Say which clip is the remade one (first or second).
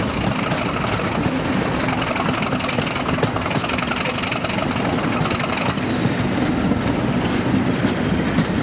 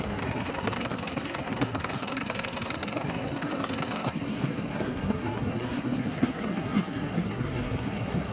second